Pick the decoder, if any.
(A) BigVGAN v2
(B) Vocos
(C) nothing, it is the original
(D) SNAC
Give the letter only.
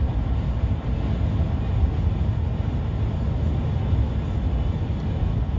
C